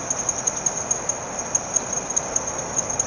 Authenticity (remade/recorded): recorded